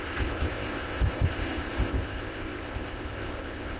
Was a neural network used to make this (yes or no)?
yes